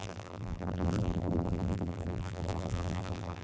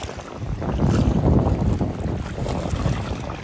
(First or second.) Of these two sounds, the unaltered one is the second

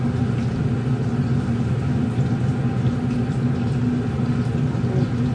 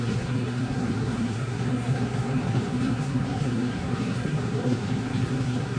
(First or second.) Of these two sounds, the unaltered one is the first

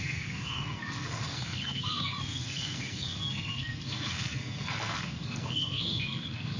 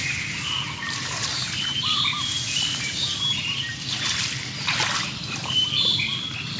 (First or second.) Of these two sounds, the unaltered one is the second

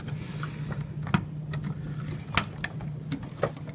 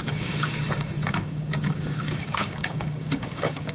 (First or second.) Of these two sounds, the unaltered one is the first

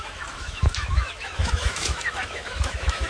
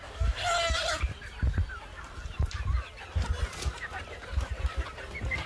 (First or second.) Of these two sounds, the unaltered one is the second